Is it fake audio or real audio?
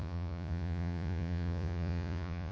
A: fake